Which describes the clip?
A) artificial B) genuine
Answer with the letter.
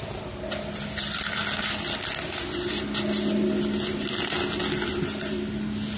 B